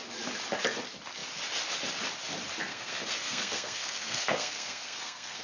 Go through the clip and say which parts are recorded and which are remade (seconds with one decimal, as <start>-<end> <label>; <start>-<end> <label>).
0.0-2.7 recorded; 2.7-5.4 remade